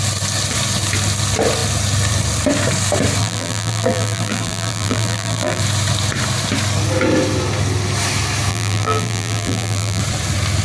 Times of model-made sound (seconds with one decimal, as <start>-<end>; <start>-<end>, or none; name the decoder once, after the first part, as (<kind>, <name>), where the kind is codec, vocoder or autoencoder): 3.2-5.6 (vocoder, BigVGAN v2); 8.5-10.0